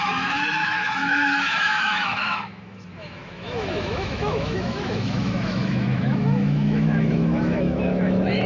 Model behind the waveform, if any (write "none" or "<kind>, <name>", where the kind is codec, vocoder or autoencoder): autoencoder, DAC-VAE